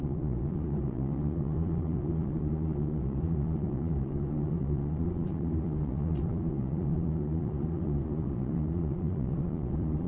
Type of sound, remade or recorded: remade